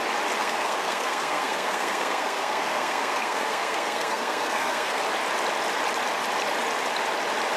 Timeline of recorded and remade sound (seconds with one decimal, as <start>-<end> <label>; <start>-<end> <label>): 0.0-0.4 recorded; 0.4-5.0 remade; 5.0-7.6 recorded